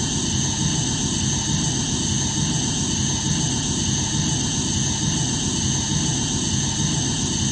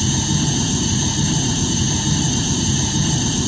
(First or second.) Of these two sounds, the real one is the first